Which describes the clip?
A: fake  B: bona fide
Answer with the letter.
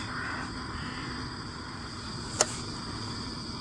B